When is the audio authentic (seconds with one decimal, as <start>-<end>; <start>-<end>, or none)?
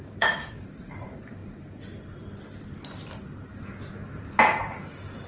1.4-4.6